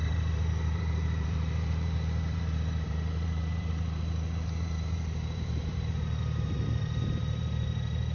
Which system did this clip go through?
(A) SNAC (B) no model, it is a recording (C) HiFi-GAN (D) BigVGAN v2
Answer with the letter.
D